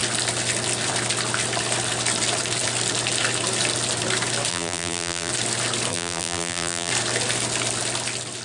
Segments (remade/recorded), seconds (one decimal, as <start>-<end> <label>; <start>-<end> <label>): 0.0-4.5 recorded; 4.5-5.3 remade; 5.3-5.9 recorded; 5.9-6.9 remade; 6.9-8.4 recorded